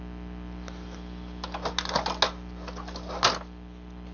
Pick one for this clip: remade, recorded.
recorded